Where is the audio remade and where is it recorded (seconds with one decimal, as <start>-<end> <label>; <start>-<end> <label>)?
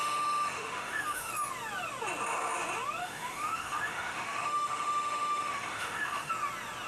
0.0-1.3 remade; 1.3-3.0 recorded; 3.0-6.3 remade; 6.3-6.9 recorded